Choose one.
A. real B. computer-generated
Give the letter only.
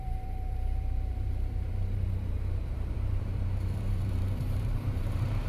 B